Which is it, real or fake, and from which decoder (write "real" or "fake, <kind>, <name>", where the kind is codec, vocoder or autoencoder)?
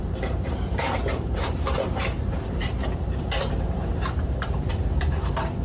fake, vocoder, BigVGAN v2